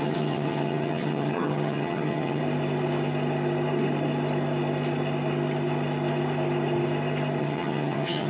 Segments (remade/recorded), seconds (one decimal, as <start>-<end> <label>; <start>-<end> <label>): 0.0-2.4 remade; 2.4-7.4 recorded; 7.4-8.3 remade